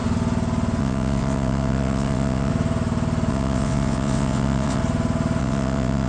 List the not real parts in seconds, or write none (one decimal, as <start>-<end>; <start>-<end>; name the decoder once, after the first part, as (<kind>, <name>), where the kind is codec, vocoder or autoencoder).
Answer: 0.8-2.5 (vocoder, WaveNeXt); 3.3-4.8; 5.4-6.1